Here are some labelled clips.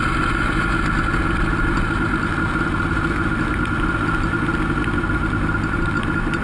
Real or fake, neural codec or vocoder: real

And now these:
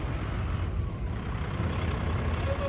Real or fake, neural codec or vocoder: real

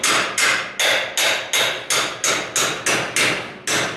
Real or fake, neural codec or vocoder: real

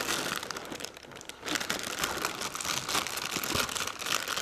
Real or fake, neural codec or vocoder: real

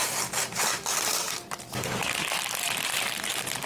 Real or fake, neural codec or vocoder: fake, vocoder, BigVGAN v2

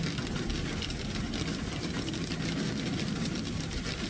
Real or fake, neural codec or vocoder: real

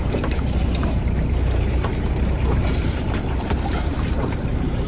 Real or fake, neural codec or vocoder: fake, vocoder, BigVGAN v2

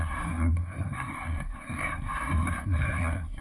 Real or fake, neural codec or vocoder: fake, codec, SNAC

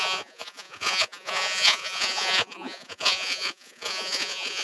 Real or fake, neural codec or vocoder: fake, vocoder, Vocos